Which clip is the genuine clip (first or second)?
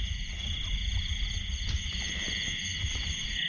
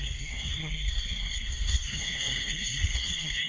first